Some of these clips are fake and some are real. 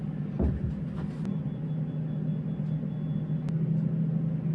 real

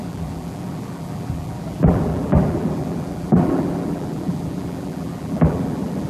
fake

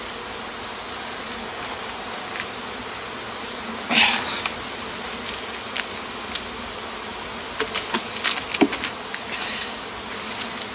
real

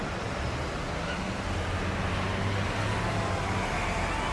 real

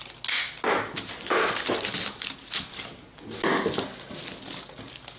real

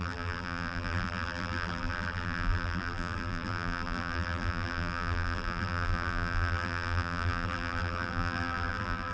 fake